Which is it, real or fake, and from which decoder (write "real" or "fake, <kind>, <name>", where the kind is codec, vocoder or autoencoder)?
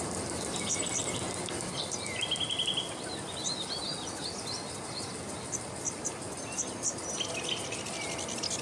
real